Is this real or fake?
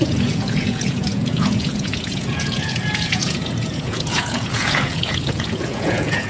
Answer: fake